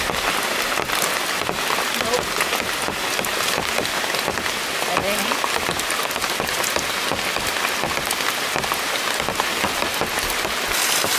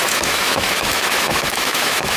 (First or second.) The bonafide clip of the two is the first